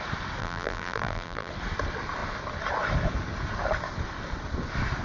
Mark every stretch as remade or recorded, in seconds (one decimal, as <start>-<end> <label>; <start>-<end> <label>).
0.0-0.4 recorded; 0.4-1.5 remade; 1.5-5.0 recorded